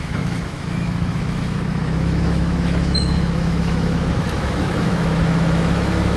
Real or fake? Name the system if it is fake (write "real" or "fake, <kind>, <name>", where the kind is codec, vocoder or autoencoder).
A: fake, autoencoder, DAC-VAE